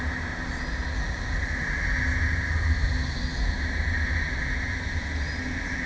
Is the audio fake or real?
real